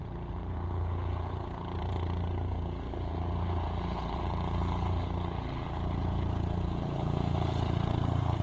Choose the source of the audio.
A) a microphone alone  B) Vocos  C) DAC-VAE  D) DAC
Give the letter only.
B